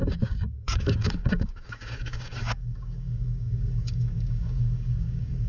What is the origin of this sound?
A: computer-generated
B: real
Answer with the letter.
A